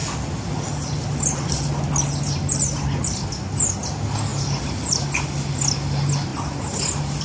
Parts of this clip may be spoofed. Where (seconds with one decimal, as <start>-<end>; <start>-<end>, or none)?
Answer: none